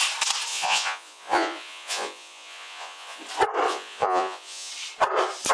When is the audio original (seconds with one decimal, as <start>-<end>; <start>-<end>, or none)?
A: 0.0-0.5; 3.2-3.7; 4.7-5.5